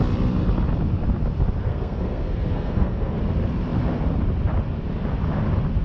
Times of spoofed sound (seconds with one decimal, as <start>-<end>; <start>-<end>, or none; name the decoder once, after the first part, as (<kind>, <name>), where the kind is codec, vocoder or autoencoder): 1.7-3.2 (codec, SNAC)